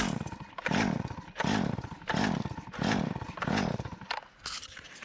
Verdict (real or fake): real